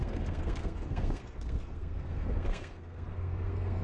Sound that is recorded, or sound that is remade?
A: remade